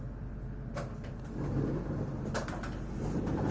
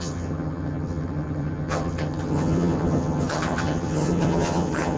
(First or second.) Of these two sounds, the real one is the first